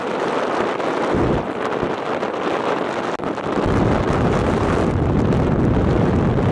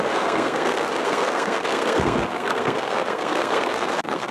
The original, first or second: first